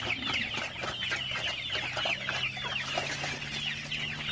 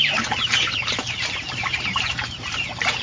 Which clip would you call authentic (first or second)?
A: first